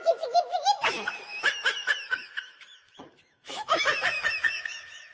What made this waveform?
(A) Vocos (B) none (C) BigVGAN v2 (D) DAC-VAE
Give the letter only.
D